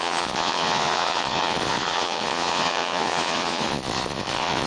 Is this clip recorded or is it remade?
remade